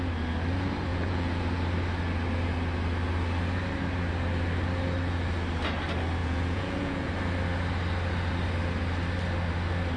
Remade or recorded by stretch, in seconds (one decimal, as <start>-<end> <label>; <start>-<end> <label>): 0.0-0.9 recorded; 0.9-1.4 remade; 1.4-6.2 recorded; 6.2-7.1 remade; 7.1-10.0 recorded